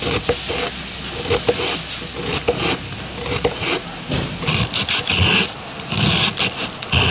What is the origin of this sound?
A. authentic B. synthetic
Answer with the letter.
A